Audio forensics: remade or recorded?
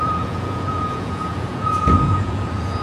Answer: remade